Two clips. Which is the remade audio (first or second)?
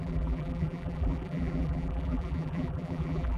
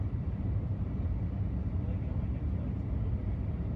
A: first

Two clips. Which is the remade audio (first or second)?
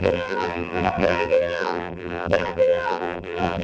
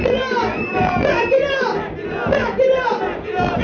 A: first